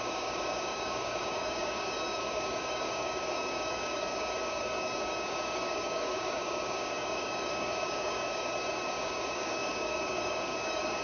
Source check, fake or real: fake